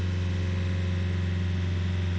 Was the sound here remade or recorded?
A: recorded